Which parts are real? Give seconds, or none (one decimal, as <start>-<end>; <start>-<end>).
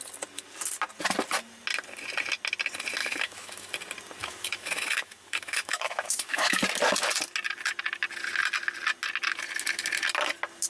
0.0-3.0; 3.7-4.2; 6.6-10.7